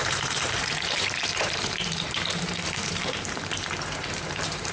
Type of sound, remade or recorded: remade